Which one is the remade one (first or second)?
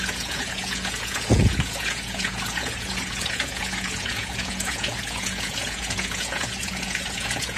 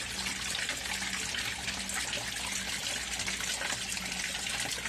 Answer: first